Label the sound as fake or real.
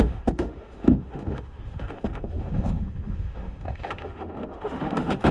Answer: fake